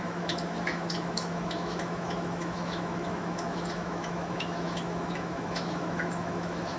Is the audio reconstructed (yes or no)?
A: yes